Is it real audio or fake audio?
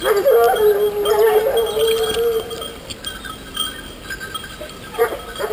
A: real